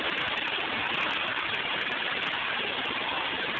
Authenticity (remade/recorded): recorded